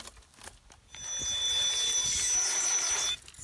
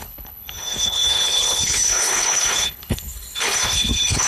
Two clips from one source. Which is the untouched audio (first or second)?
first